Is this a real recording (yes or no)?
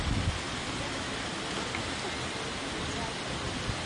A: yes